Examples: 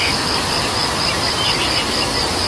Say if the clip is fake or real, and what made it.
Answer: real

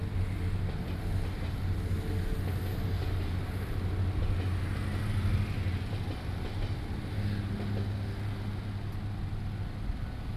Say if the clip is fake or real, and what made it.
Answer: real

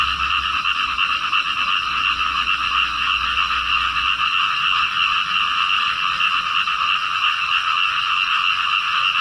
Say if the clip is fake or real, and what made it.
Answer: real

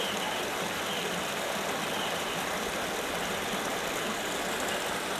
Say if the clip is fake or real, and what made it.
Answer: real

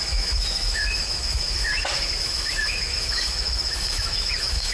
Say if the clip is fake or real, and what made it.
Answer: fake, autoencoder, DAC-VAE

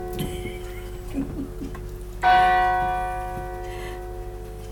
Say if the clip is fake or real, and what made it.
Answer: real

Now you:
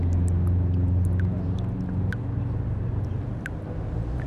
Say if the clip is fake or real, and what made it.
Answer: real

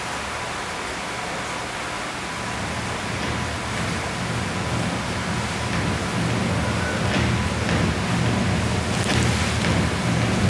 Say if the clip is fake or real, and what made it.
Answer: real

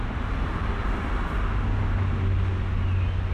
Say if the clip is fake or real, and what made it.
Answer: real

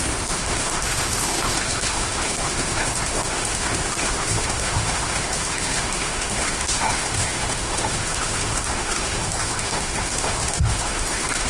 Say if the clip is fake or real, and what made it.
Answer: fake, autoencoder, DAC-VAE